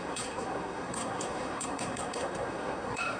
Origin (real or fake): fake